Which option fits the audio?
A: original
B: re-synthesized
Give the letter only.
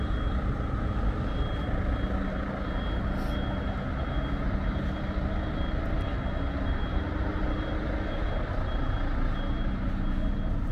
A